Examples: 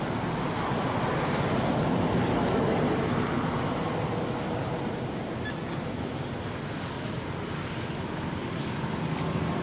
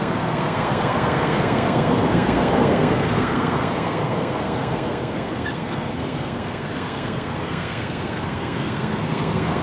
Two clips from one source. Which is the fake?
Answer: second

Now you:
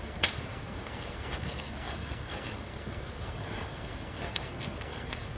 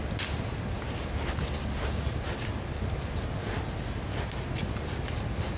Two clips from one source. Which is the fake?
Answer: first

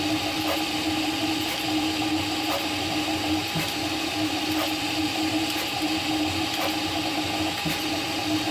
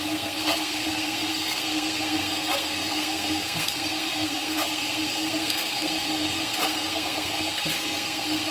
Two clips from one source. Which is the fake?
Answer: second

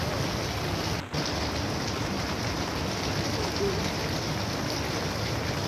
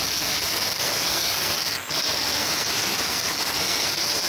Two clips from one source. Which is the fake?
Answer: second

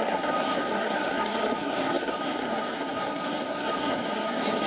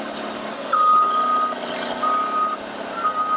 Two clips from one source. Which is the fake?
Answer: first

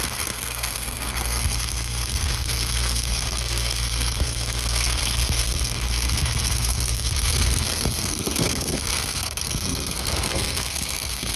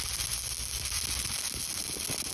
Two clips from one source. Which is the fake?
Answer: first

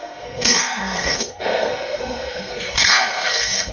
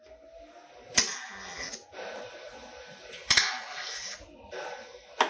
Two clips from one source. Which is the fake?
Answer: first